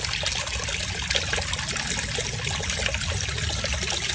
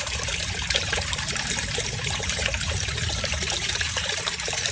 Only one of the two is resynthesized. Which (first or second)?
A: second